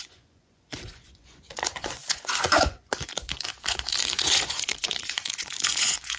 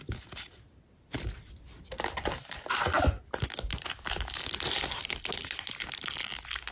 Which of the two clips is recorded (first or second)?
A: second